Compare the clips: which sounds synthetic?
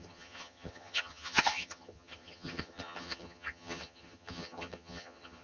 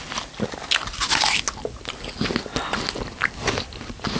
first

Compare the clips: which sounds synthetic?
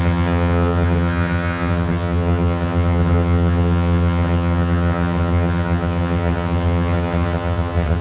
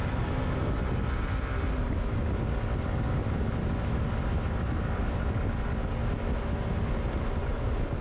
first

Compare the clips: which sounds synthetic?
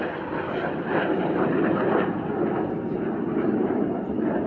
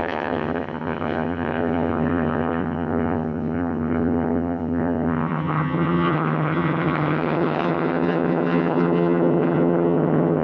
second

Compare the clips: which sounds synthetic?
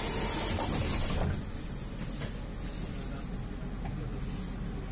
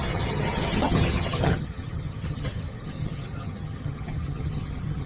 second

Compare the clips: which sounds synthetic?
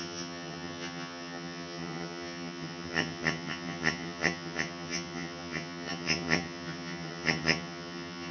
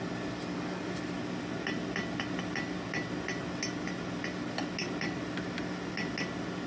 first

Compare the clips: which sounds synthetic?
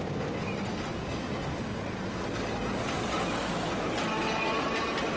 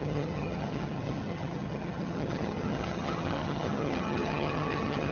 second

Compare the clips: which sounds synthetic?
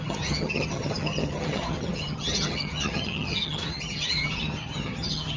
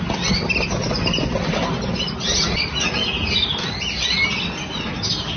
first